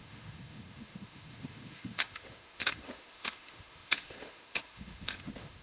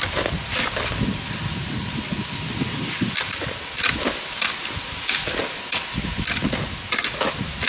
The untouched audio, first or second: second